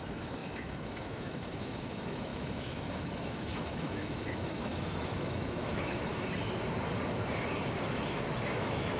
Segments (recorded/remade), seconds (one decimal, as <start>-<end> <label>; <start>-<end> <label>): 0.0-6.1 remade; 6.1-8.6 recorded; 8.6-9.0 remade